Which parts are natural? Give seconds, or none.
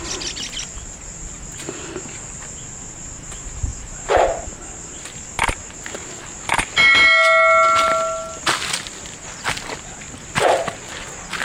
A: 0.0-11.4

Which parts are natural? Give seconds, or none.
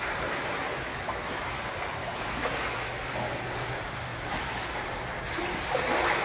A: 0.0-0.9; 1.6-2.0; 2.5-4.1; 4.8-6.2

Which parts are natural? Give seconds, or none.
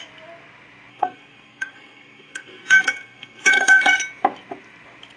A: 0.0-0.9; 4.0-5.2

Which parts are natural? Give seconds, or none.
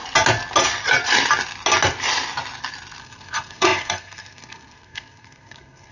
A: 0.0-3.0